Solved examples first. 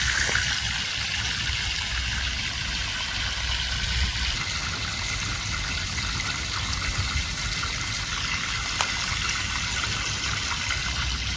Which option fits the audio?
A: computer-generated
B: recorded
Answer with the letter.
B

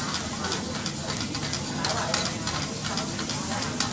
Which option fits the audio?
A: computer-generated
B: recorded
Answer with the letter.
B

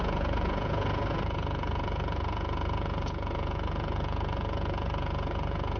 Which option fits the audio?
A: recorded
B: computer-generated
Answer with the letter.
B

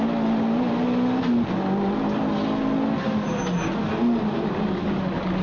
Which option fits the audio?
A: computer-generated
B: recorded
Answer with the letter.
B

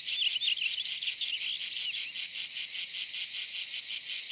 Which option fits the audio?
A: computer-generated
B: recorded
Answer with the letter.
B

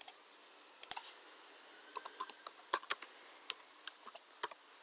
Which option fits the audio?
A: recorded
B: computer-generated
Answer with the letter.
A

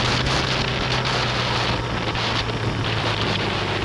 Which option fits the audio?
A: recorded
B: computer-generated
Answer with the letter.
A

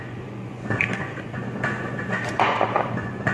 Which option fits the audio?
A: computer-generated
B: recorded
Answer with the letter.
A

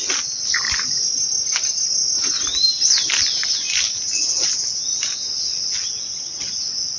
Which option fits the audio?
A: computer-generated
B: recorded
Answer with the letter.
B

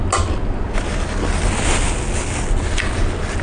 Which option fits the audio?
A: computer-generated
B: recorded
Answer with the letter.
B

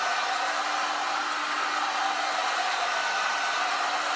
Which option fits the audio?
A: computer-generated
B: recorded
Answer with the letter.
B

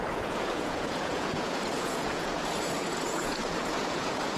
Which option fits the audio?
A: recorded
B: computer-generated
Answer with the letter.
B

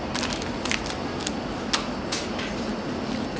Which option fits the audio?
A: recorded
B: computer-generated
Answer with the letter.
A